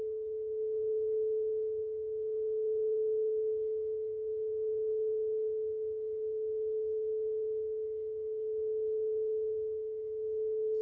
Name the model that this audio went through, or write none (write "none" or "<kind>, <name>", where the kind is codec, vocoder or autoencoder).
codec, HILCodec